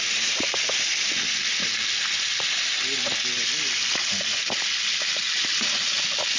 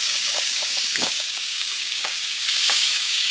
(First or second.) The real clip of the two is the first